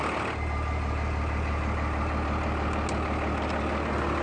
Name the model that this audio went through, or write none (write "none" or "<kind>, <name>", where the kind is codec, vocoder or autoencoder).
none